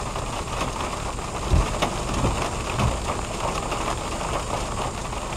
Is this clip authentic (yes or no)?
yes